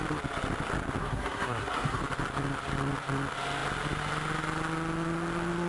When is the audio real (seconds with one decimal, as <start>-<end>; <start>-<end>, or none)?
0.0-1.0; 2.0-5.7